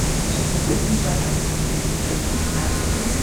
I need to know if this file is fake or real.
real